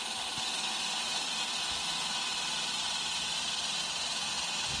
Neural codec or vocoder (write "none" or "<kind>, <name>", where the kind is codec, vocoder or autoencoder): none